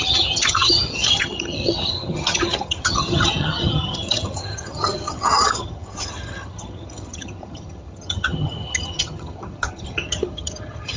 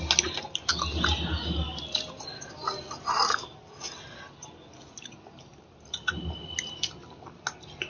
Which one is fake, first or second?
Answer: first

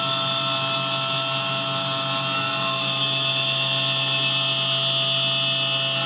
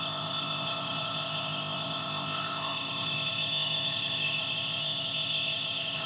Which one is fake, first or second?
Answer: second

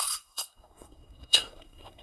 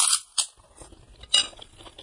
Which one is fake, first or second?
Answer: first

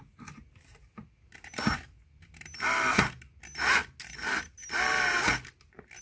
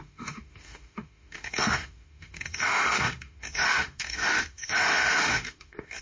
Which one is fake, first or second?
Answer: second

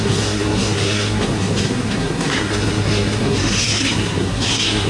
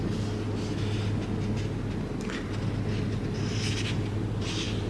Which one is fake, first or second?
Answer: first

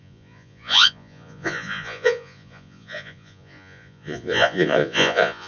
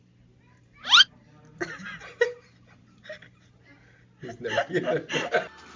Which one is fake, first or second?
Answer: first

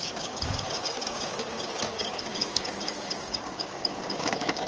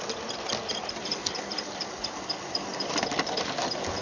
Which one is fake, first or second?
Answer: first